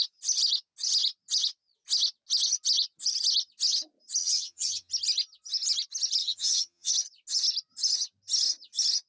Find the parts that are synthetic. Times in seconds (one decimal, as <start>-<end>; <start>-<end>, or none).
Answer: 4.2-4.9; 6.2-6.9